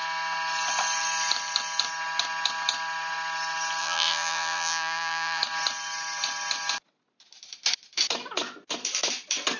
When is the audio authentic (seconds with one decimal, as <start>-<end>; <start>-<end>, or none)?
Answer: 0.0-3.8; 5.4-9.6